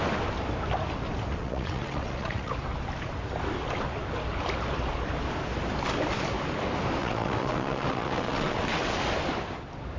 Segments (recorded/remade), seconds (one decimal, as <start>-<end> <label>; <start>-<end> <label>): 0.0-1.3 recorded; 1.3-2.5 remade; 2.5-7.0 recorded; 7.0-8.9 remade; 8.9-10.0 recorded